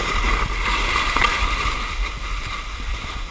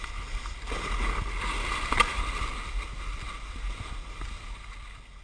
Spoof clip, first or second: first